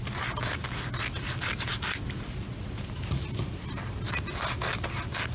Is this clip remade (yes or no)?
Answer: no